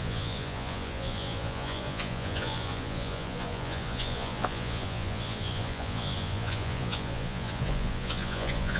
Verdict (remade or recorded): remade